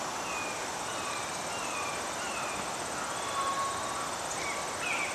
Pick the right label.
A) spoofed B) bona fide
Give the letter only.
B